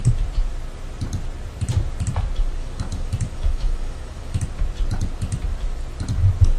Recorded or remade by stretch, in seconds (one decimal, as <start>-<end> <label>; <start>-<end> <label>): 0.0-2.6 recorded; 2.6-4.4 remade; 4.4-6.6 recorded